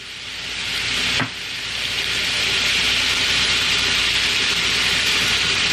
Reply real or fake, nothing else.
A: real